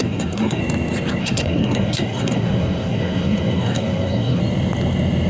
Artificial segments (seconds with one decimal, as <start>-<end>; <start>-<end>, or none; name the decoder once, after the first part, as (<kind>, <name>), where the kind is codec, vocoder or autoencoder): 0.0-0.6 (codec, SNAC); 1.2-4.4